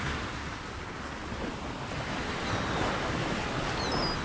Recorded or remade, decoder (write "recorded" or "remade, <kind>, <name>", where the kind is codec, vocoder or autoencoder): recorded